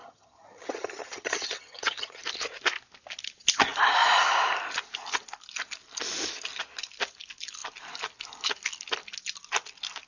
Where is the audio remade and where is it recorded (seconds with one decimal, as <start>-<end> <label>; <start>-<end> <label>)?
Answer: 0.0-2.2 remade; 2.2-10.1 recorded